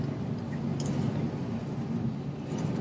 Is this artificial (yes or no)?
no